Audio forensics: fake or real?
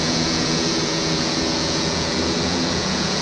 fake